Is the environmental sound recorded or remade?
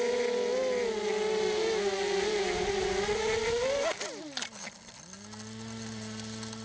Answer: recorded